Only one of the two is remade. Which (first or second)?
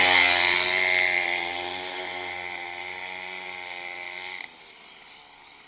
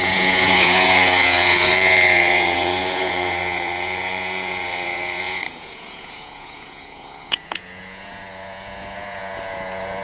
second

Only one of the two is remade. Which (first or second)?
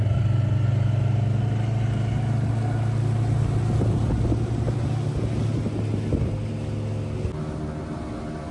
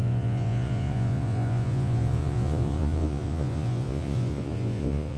second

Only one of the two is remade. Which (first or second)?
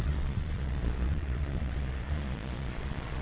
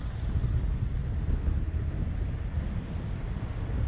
first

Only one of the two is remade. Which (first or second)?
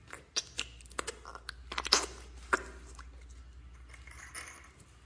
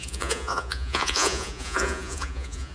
second